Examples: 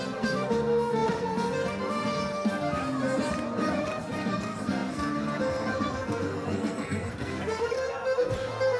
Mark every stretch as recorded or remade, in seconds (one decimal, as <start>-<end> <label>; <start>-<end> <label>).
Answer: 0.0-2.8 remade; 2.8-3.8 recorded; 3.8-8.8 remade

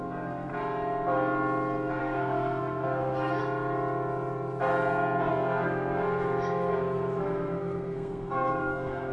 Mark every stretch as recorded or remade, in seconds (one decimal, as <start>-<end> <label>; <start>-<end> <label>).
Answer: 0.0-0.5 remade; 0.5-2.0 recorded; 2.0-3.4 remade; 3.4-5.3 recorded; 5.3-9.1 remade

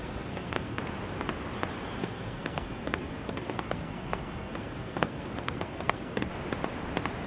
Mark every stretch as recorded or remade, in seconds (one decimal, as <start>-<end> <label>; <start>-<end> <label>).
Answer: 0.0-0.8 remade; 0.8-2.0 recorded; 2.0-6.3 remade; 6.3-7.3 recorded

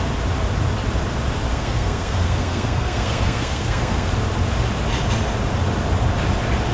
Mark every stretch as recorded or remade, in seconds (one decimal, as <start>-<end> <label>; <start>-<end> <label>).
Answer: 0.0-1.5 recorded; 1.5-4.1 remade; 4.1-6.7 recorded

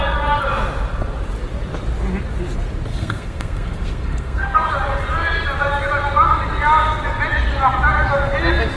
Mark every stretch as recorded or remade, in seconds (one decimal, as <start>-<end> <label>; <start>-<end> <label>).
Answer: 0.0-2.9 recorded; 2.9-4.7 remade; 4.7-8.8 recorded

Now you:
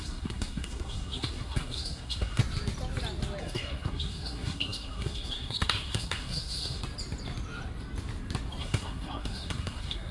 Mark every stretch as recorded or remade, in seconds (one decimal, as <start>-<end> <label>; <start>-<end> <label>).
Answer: 0.0-2.4 remade; 2.4-3.4 recorded; 3.4-6.8 remade; 6.8-8.6 recorded; 8.6-10.1 remade